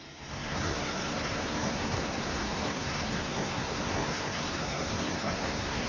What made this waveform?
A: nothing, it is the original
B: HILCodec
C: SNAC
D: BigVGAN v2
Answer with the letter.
C